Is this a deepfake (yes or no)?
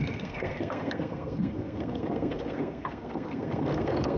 yes